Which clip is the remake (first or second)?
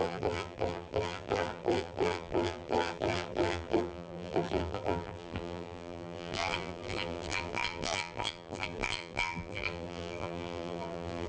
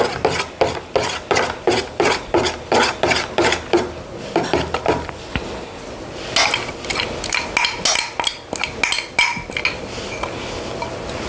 first